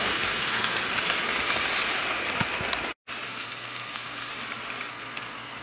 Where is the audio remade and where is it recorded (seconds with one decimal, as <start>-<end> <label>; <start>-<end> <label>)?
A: 0.0-0.8 remade; 0.8-3.3 recorded; 3.3-4.3 remade; 4.3-4.9 recorded; 4.9-5.6 remade